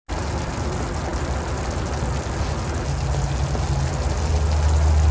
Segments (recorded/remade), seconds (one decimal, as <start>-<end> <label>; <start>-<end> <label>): 0.0-5.1 recorded